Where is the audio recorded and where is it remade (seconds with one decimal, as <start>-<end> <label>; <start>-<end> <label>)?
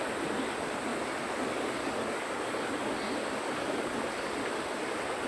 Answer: 0.0-1.8 recorded; 1.8-2.7 remade; 2.7-3.2 recorded; 3.2-3.9 remade; 3.9-5.3 recorded